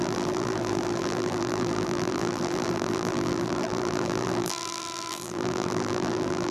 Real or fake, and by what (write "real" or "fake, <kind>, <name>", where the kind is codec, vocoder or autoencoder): fake, vocoder, BigVGAN v2